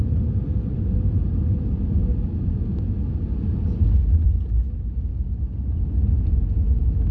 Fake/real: real